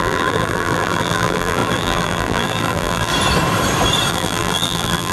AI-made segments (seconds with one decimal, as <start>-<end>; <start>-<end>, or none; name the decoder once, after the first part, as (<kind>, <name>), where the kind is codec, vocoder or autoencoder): 0.0-3.1 (vocoder, BigVGAN v2); 4.1-5.1